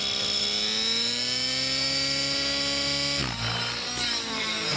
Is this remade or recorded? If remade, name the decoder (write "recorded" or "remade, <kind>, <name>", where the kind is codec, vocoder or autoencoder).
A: recorded